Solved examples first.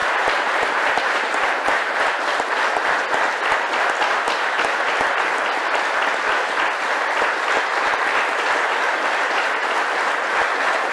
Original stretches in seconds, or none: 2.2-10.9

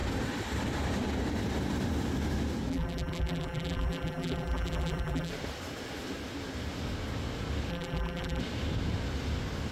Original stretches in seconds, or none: 0.0-2.7; 5.3-7.7; 8.4-9.7

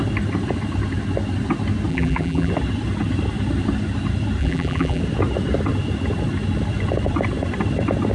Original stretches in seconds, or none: 0.0-1.9; 2.5-4.4; 5.0-8.1

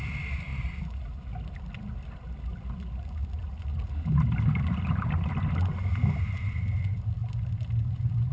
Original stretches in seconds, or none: 0.0-8.3

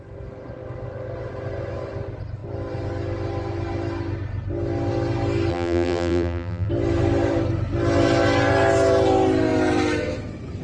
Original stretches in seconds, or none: 0.0-5.5; 6.7-10.6

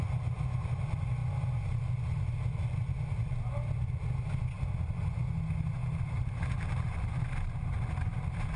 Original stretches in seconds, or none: 0.0-5.8

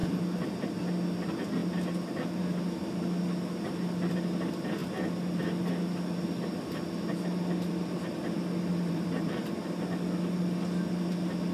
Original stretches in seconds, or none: 0.0-8.7; 9.4-11.5